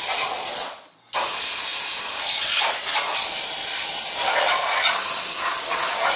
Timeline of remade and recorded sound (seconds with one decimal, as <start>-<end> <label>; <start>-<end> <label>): 0.0-6.2 recorded